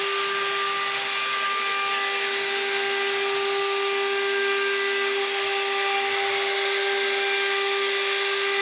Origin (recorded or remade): recorded